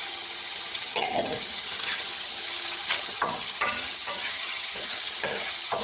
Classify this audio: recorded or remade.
remade